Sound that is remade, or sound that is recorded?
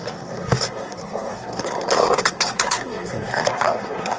remade